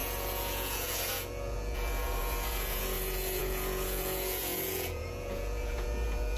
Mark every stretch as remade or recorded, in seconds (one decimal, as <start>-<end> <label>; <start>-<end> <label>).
0.0-6.4 remade